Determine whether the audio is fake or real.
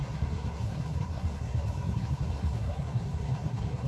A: fake